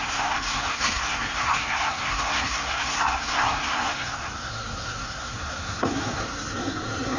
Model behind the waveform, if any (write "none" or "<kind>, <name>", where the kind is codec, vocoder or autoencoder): codec, SNAC